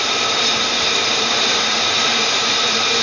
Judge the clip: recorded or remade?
remade